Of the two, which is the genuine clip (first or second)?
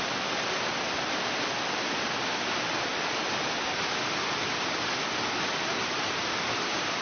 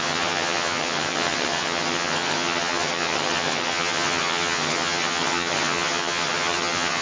first